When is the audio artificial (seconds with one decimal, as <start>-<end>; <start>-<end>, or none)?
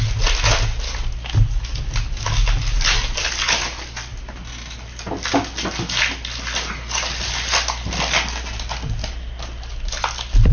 none